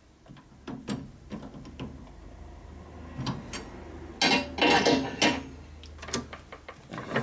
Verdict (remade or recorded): recorded